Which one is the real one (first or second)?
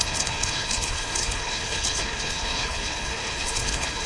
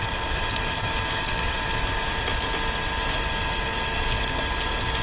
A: second